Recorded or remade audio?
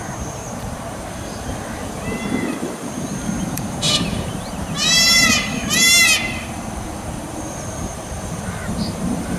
remade